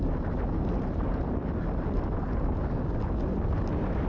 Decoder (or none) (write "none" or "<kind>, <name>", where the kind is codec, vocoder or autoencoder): none